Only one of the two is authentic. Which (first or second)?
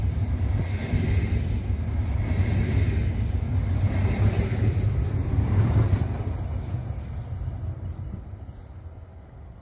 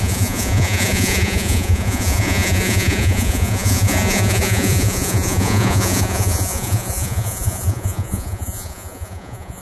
first